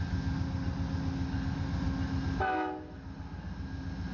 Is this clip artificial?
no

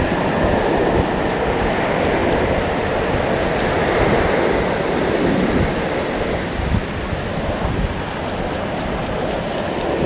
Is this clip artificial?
no